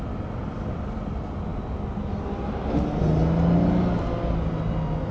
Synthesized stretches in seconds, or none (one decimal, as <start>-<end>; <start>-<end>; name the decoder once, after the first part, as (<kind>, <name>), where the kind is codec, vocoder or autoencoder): none